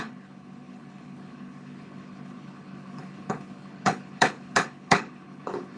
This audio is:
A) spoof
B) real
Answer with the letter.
A